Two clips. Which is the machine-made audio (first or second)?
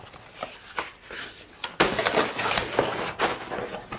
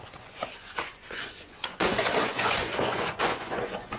second